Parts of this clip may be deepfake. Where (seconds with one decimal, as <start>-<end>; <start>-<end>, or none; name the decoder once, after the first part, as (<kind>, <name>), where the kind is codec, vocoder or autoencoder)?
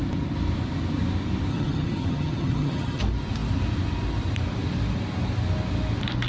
1.5-3.0 (vocoder, HiFi-GAN)